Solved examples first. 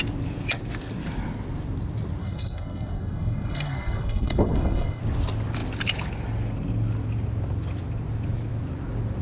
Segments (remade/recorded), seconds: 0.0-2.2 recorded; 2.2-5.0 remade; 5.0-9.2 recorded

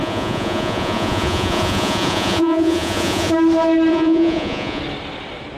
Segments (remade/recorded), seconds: 0.0-3.3 remade; 3.3-3.9 recorded; 3.9-4.8 remade; 4.8-5.6 recorded

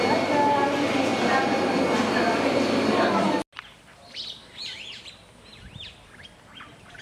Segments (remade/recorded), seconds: 0.0-7.0 recorded

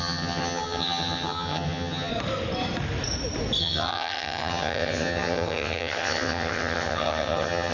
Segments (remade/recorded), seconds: 0.0-2.1 remade; 2.1-3.6 recorded; 3.6-7.7 remade

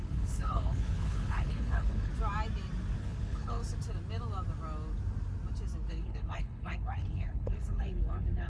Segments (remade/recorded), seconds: 0.0-2.1 remade; 2.1-3.0 recorded; 3.0-3.6 remade; 3.6-5.9 recorded; 5.9-8.5 remade